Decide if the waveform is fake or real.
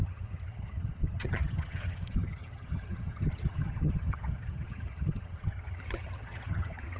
fake